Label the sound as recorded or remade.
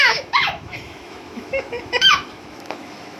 remade